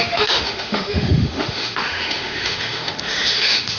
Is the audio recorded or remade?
remade